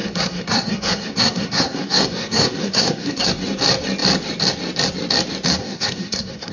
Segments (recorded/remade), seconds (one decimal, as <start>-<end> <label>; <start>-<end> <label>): 0.0-3.3 remade; 3.3-5.6 recorded; 5.6-6.5 remade